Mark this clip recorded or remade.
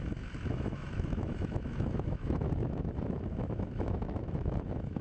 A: remade